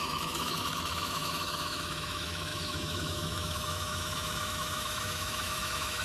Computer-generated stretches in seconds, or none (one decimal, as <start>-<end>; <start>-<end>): 0.0-6.0